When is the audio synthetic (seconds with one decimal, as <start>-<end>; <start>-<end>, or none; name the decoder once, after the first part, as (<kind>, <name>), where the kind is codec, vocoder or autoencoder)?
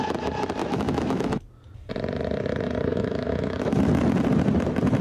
0.6-1.4 (autoencoder, DAC-VAE); 2.9-3.7